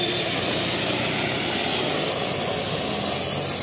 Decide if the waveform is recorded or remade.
recorded